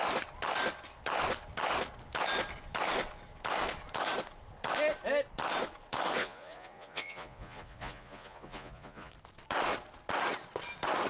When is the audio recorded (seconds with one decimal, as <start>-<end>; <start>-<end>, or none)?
0.0-6.2; 9.1-11.1